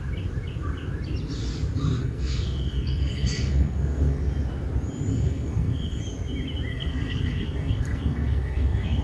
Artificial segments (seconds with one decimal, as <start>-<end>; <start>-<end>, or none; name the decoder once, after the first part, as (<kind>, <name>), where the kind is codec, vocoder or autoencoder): 2.0-4.3 (codec, SNAC); 5.1-6.0; 6.7-9.0